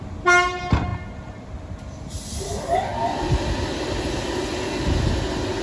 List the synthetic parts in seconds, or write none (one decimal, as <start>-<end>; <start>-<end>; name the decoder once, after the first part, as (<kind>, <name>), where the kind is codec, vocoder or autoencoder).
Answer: none